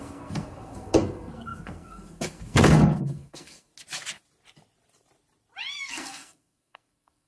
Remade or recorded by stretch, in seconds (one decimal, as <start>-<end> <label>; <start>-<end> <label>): 0.0-3.7 remade; 3.7-5.8 recorded; 5.8-7.3 remade